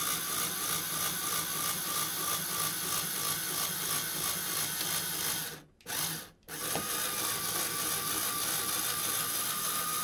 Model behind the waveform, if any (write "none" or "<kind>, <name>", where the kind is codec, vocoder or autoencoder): none